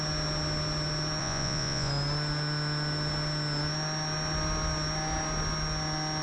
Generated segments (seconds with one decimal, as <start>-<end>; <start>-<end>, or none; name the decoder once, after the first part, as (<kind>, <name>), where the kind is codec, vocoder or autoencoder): 1.2-1.9 (vocoder, Vocos)